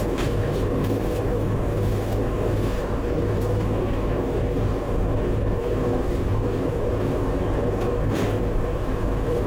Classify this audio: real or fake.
fake